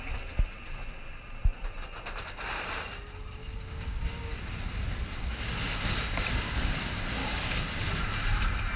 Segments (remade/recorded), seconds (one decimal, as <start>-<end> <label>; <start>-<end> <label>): 0.0-3.4 recorded; 3.4-4.4 remade; 4.4-7.2 recorded; 7.2-8.0 remade; 8.0-8.8 recorded